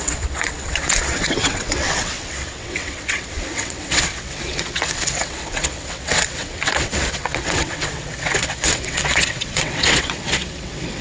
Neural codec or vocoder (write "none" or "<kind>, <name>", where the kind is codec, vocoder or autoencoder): vocoder, WaveNeXt